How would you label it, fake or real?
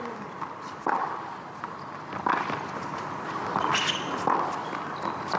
real